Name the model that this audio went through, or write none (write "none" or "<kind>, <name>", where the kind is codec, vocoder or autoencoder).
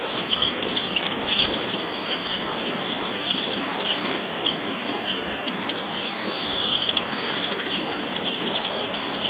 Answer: codec, DAC